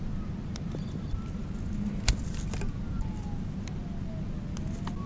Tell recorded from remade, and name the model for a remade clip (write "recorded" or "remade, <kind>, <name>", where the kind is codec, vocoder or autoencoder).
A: recorded